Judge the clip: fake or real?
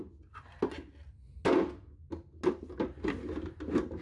real